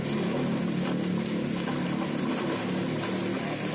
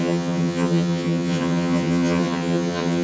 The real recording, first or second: first